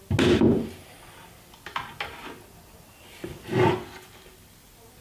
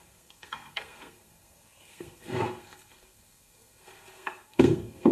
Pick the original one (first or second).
first